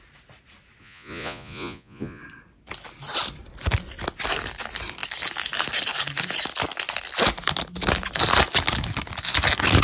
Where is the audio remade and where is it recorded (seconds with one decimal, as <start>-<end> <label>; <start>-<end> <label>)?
0.0-0.8 recorded; 0.8-2.2 remade; 2.2-9.8 recorded